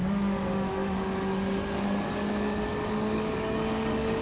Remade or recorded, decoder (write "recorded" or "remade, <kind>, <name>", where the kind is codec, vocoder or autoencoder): remade, codec, DAC